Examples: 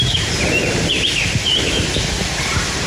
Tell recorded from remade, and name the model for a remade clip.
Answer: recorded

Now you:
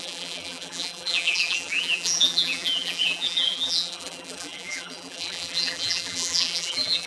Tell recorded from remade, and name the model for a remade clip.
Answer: remade, vocoder, BigVGAN v2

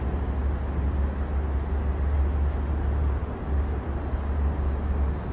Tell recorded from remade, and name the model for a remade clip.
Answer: recorded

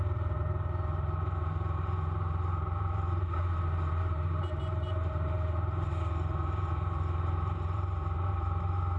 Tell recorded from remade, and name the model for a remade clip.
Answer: remade, vocoder, BigVGAN v2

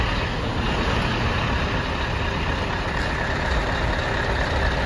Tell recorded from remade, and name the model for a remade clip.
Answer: recorded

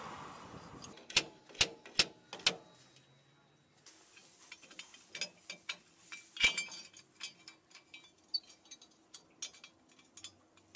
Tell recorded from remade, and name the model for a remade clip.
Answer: recorded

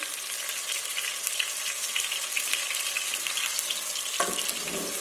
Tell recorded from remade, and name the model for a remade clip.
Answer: recorded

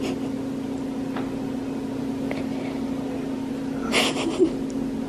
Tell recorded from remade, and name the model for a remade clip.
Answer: recorded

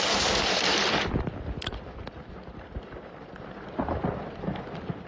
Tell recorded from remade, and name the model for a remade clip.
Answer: remade, vocoder, BigVGAN v2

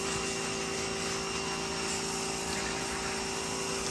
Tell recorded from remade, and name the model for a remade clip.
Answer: recorded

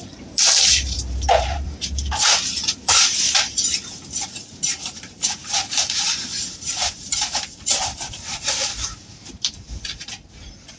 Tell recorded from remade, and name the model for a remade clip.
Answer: remade, vocoder, BigVGAN v2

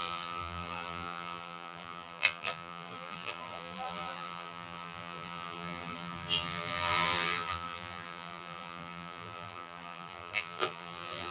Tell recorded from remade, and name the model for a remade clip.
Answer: remade, vocoder, BigVGAN v2